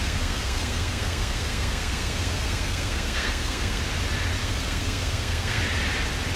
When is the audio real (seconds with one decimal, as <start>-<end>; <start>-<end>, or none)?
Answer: 3.8-4.4; 5.6-6.4